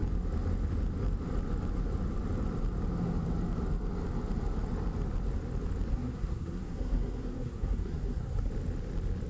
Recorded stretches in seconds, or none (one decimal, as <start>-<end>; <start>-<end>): 0.0-5.9; 8.5-9.3